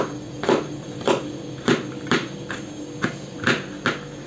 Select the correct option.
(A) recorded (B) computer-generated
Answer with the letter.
A